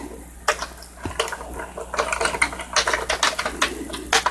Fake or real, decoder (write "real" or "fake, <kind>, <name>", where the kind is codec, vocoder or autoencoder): real